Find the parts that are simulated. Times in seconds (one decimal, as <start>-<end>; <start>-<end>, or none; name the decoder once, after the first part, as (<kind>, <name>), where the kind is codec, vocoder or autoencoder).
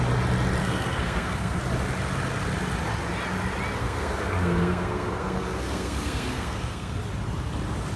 0.6-1.6 (codec, SNAC); 3.8-7.0